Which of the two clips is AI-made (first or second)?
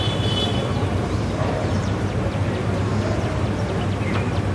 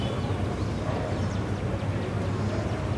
first